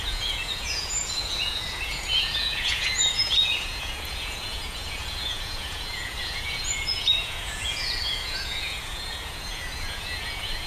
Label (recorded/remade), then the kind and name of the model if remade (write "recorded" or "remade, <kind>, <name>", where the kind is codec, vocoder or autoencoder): remade, vocoder, Vocos